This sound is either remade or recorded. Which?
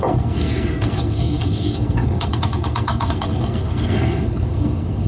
remade